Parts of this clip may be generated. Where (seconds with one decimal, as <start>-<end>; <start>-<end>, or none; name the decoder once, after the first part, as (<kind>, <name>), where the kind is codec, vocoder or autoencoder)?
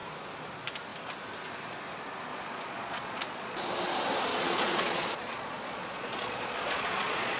2.3-3.6 (vocoder, Vocos); 4.3-7.4